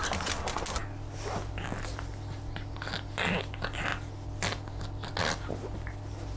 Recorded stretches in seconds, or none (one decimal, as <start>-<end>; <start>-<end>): 0.0-6.4